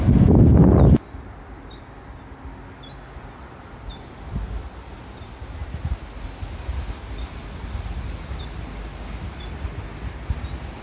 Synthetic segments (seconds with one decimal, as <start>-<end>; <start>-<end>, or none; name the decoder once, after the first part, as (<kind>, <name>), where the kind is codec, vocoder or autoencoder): none